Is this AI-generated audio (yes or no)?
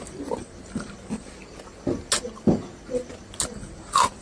no